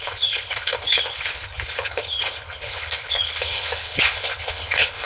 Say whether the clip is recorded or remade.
remade